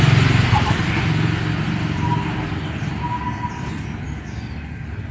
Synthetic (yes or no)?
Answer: no